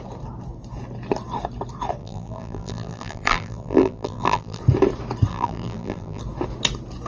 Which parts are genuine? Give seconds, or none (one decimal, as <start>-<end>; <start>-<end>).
0.0-2.0; 4.6-5.3; 6.2-7.1